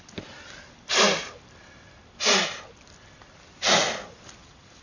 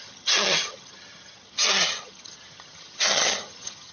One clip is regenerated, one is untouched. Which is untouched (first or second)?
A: first